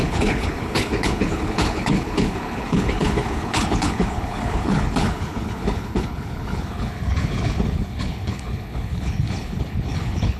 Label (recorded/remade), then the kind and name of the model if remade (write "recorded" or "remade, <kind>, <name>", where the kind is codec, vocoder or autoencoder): remade, codec, HILCodec